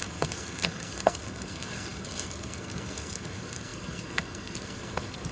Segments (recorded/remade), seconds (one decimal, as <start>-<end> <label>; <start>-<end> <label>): 0.0-5.3 remade